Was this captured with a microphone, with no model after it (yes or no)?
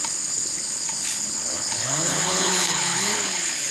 no